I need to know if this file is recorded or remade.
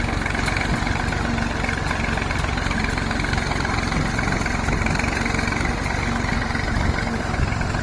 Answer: recorded